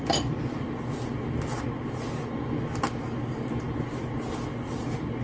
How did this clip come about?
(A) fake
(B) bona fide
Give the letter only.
B